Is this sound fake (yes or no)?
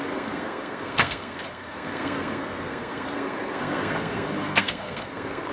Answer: yes